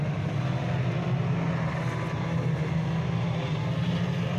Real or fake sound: real